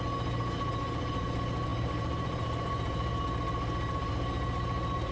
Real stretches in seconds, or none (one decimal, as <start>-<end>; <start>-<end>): 0.0-5.1